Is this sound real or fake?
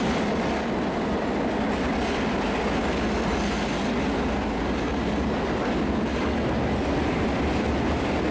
real